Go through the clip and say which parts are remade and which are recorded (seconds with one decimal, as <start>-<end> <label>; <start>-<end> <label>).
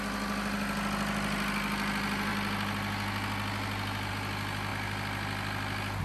0.0-6.0 recorded